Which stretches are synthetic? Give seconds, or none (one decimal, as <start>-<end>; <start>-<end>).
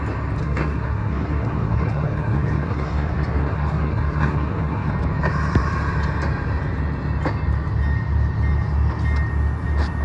0.4-4.9